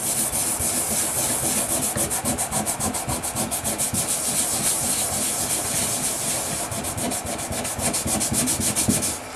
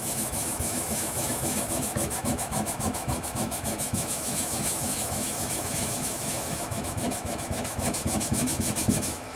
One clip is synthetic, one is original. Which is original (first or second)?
first